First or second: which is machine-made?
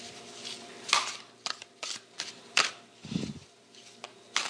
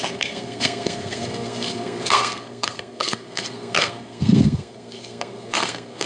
second